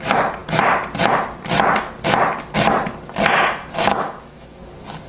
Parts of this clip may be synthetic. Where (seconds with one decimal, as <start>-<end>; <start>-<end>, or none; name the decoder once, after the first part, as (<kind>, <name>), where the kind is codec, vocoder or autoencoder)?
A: 3.9-4.6 (autoencoder, DAC-VAE)

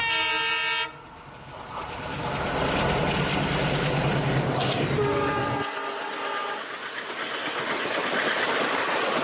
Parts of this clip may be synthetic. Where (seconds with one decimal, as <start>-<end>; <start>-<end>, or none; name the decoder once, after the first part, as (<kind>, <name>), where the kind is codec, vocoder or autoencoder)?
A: none